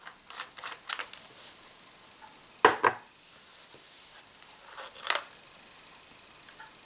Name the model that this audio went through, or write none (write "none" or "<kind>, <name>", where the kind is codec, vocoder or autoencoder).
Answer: none